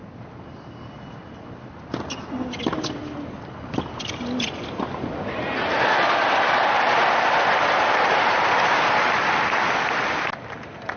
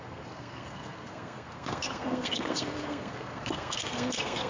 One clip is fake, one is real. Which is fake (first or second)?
second